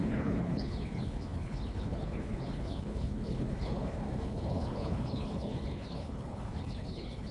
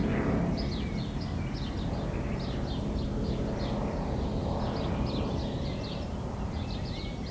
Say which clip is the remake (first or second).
first